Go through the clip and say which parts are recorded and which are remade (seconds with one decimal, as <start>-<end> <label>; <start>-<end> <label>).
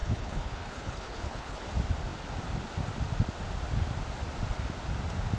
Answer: 0.0-1.6 remade; 1.6-5.4 recorded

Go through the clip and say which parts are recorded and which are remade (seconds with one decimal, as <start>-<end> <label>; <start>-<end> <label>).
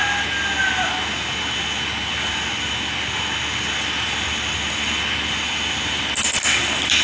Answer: 0.0-7.0 recorded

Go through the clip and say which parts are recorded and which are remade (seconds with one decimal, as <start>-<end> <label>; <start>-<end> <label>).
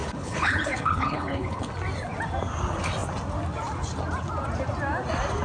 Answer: 0.0-1.7 remade; 1.7-5.4 recorded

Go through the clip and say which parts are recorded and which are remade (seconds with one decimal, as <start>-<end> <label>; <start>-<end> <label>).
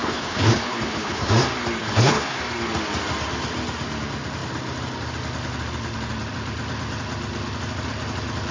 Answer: 0.0-1.3 remade; 1.3-1.8 recorded; 1.8-2.4 remade; 2.4-8.5 recorded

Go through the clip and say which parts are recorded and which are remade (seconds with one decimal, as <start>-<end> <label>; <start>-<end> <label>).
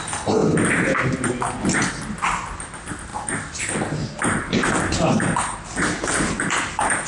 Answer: 0.0-7.1 recorded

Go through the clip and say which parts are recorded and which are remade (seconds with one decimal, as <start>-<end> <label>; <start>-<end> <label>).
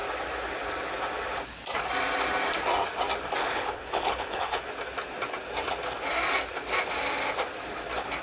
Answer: 0.0-3.4 recorded; 3.4-4.7 remade; 4.7-8.2 recorded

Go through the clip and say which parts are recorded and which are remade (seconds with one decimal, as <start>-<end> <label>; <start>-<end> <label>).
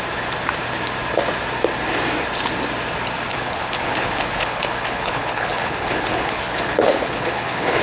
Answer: 0.0-3.3 recorded; 3.3-7.8 remade